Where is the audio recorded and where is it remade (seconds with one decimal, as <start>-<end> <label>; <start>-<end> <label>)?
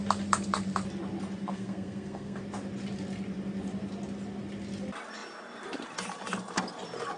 0.0-1.4 recorded; 1.4-2.4 remade; 2.4-7.2 recorded